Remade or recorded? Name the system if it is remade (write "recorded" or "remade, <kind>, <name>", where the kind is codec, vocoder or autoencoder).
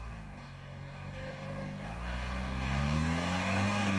remade, codec, DAC